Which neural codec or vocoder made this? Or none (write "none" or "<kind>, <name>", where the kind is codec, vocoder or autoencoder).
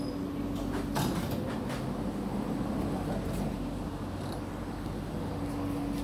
none